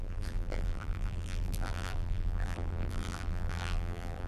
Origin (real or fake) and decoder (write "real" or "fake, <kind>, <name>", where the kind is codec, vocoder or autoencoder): fake, vocoder, BigVGAN v2